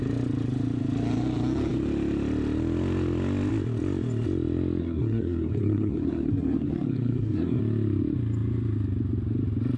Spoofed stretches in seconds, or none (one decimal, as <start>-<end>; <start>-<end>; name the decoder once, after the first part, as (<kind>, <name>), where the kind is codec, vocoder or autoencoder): 4.8-7.6 (codec, SNAC)